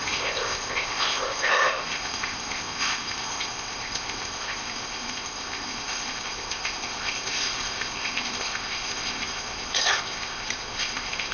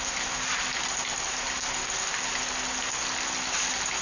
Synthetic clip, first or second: first